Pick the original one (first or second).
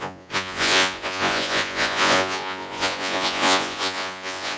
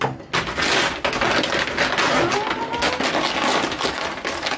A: second